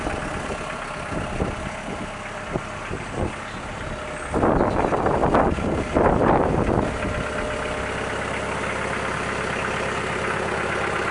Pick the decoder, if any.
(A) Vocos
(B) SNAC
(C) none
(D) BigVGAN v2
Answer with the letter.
C